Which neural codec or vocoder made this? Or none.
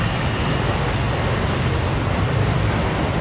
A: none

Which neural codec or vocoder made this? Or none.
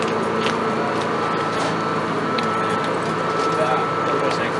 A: none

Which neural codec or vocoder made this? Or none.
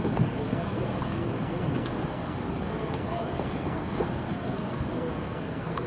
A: codec, SNAC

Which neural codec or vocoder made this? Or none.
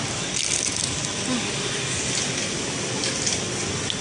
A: none